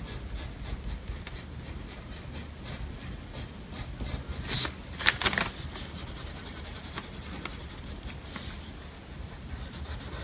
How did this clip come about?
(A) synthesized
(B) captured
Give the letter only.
B